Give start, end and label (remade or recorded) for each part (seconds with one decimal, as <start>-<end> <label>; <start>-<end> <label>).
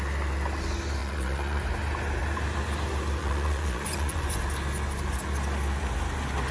0.0-1.0 recorded; 1.0-1.6 remade; 1.6-3.2 recorded; 3.2-4.4 remade; 4.4-6.5 recorded